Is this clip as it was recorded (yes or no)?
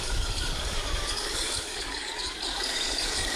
no